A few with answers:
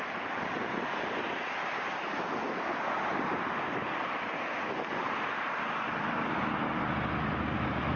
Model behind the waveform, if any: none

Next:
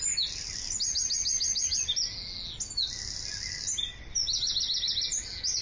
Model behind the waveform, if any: none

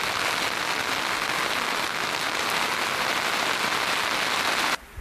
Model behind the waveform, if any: none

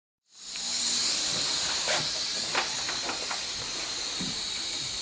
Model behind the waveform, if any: vocoder, BigVGAN v2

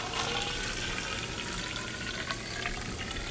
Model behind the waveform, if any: none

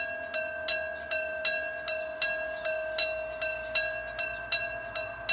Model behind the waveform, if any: none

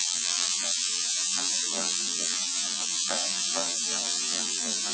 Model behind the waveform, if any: vocoder, BigVGAN v2